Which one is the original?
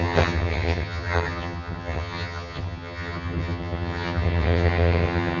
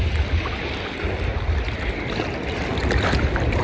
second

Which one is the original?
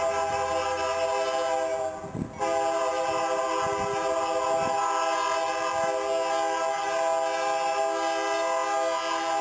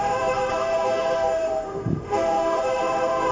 first